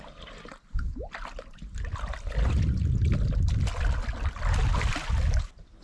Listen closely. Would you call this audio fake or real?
real